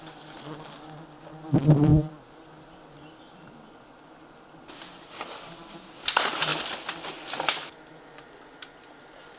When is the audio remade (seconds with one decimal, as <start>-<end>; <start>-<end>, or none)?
none